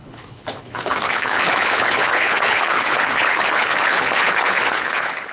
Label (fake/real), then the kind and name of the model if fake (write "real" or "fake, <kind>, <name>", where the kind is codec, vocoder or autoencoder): fake, codec, HILCodec